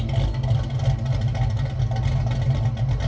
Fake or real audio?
real